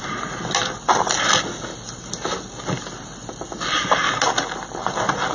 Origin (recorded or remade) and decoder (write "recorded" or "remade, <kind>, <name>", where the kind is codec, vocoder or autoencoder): recorded